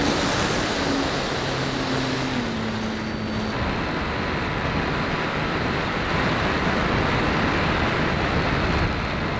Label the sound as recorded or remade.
recorded